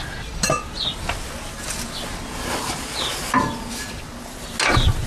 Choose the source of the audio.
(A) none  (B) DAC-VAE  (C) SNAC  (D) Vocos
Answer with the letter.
A